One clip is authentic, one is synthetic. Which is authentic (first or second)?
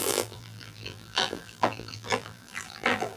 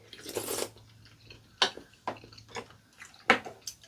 second